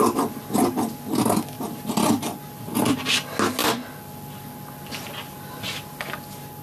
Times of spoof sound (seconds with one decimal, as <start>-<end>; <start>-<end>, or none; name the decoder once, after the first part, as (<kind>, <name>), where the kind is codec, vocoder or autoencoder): none